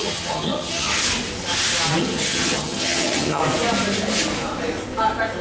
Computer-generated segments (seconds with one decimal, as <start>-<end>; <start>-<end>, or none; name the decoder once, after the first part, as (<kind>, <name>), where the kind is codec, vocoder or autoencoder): 0.0-1.0 (vocoder, HiFi-GAN); 2.0-3.4